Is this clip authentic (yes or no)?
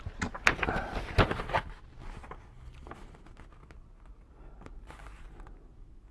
yes